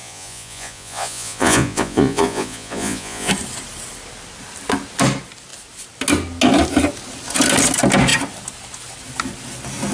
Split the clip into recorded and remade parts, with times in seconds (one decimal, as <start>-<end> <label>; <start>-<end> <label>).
0.0-3.3 remade; 3.3-9.9 recorded